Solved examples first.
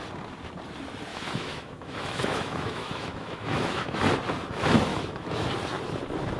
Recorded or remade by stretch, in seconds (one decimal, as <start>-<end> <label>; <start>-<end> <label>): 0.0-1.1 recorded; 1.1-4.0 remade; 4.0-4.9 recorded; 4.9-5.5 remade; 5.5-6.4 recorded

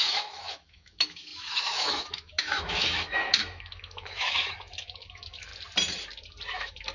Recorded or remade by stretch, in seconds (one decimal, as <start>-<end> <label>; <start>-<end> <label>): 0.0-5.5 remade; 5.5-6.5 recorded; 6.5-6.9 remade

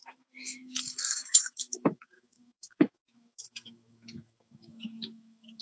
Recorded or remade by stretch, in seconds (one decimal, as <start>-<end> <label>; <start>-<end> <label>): 0.0-5.6 remade